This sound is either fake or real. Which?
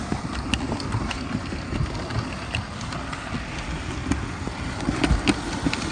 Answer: real